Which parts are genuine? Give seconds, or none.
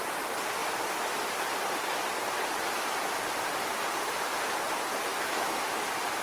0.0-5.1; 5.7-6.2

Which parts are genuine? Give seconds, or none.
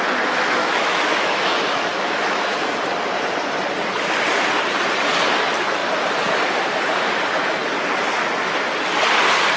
0.0-0.6; 2.6-9.6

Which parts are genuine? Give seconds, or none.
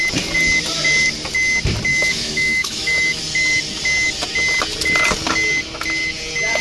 0.0-1.9; 3.2-6.6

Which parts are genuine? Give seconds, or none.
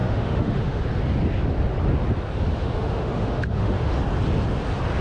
0.8-2.6; 4.0-5.0